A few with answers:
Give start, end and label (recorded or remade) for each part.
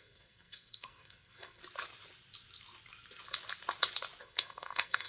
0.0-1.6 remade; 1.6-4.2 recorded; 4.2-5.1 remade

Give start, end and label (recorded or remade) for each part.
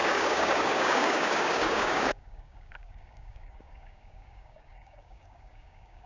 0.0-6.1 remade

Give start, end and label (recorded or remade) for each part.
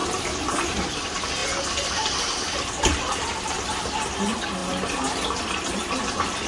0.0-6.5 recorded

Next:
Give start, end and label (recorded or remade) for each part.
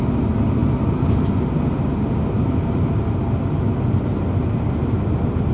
0.0-5.5 recorded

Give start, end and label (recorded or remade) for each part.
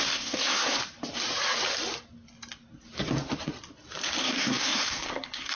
0.0-0.8 remade; 0.8-4.2 recorded; 4.2-5.6 remade